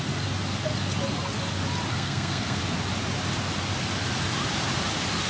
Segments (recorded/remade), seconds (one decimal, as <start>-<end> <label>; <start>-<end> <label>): 0.0-1.9 recorded; 1.9-2.6 remade; 2.6-5.3 recorded